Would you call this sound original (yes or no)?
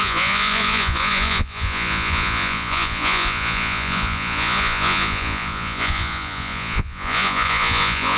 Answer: no